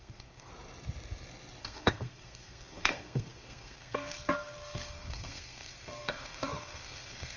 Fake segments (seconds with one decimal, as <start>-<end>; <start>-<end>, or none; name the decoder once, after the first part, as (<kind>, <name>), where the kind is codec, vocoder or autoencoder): 0.0-0.5 (codec, SNAC); 1.6-7.4